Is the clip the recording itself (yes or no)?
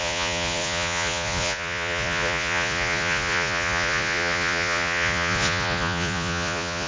no